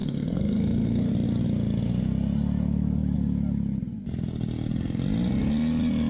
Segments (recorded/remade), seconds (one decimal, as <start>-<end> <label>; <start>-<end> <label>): 0.0-1.1 remade; 1.1-6.1 recorded